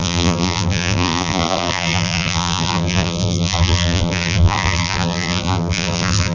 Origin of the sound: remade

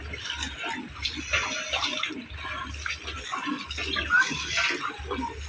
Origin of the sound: recorded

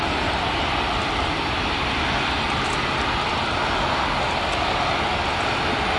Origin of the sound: recorded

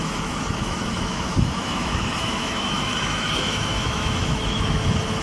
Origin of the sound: remade